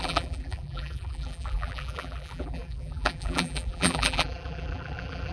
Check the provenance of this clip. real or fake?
fake